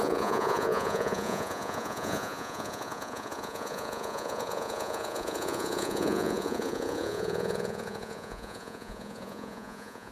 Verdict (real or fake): fake